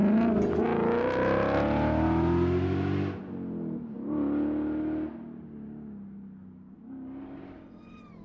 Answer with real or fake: real